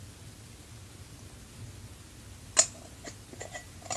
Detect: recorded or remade recorded